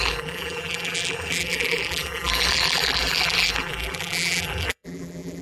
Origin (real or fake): fake